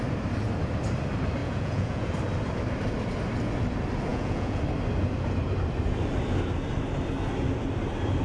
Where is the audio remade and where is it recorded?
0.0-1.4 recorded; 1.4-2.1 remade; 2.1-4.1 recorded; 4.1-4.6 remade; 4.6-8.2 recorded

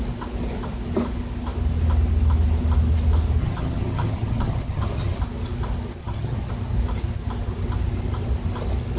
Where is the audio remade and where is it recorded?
0.0-3.4 recorded; 3.4-5.2 remade; 5.2-6.0 recorded; 6.0-6.5 remade; 6.5-9.0 recorded

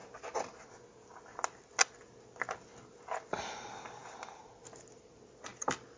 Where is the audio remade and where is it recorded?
0.0-6.0 recorded